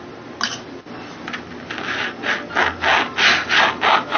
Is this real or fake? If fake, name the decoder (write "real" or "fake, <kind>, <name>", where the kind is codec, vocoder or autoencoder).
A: real